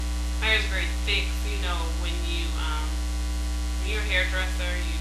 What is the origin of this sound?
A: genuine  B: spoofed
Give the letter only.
A